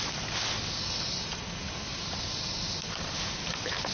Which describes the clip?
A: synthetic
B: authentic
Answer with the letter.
B